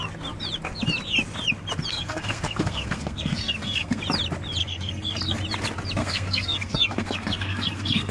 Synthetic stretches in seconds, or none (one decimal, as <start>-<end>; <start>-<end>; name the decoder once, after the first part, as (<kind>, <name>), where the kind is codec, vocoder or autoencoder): 1.9-4.0 (codec, SNAC); 4.6-5.4; 6.0-8.1